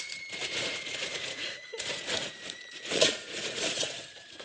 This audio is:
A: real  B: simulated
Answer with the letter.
B